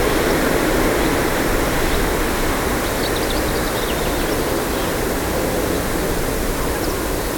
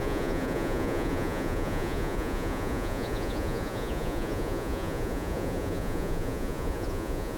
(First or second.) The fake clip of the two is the second